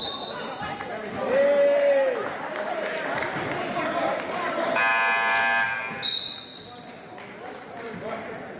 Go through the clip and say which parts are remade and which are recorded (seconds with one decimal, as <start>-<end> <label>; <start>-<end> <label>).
0.0-8.6 recorded